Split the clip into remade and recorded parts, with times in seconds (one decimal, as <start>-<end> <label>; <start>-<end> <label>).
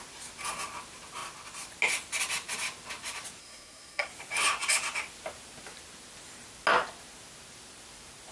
0.0-3.4 recorded; 3.4-4.1 remade; 4.1-8.3 recorded